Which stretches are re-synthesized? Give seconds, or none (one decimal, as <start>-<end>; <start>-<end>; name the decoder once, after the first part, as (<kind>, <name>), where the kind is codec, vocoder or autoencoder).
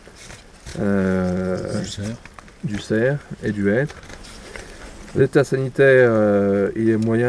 0.7-1.8 (vocoder, Vocos); 4.1-5.2